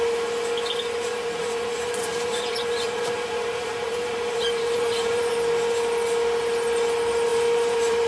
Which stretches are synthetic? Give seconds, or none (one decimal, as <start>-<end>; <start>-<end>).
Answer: 1.0-5.3; 7.3-8.1